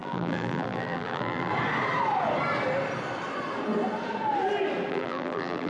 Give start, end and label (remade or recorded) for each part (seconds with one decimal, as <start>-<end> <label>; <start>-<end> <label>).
0.0-1.5 remade; 1.5-4.9 recorded; 4.9-5.7 remade